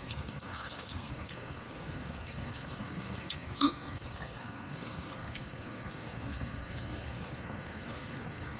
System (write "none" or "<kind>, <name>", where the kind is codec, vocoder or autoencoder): codec, SNAC